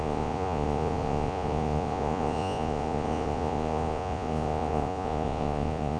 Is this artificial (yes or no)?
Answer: yes